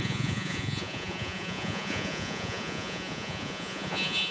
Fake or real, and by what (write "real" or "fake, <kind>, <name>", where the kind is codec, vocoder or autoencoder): fake, vocoder, Vocos